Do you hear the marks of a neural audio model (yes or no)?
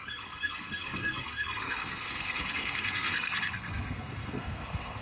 yes